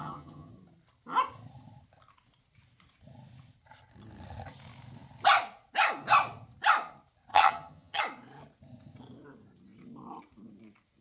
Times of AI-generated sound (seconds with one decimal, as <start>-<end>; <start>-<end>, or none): 0.0-0.5; 7.3-8.0